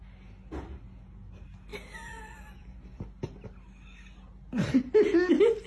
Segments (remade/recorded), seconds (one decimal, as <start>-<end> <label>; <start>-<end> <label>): 0.0-5.7 recorded